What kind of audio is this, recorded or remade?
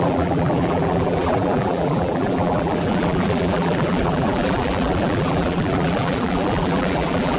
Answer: remade